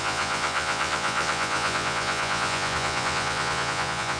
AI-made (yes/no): yes